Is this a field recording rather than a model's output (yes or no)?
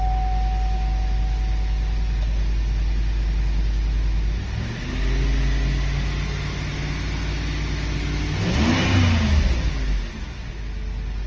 yes